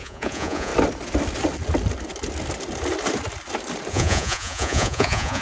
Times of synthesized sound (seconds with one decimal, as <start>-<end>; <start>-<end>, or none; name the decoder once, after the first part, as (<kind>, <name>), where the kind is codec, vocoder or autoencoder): 0.0-0.7 (vocoder, Vocos); 3.9-5.4